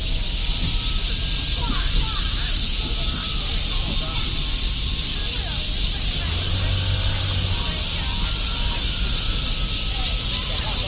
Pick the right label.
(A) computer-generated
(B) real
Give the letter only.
B